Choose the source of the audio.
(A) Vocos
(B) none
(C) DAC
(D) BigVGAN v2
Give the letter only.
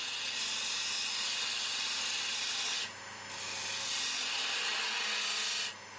B